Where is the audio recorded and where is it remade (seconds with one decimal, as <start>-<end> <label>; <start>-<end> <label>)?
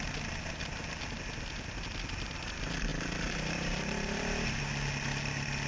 0.0-2.9 recorded; 2.9-4.6 remade; 4.6-5.7 recorded